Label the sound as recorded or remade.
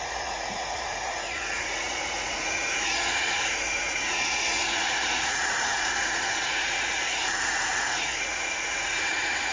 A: remade